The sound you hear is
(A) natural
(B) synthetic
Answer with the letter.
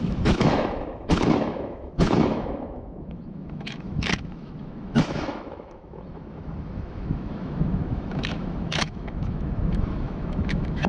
B